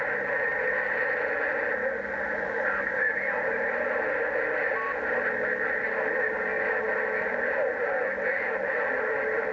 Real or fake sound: real